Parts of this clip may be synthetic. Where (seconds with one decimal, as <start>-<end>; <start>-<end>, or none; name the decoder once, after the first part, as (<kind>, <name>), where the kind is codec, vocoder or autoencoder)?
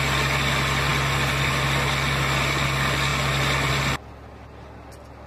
none